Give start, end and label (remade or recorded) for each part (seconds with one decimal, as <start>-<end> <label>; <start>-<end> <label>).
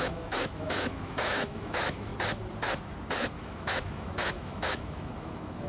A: 0.0-2.1 remade; 2.1-3.4 recorded; 3.4-5.7 remade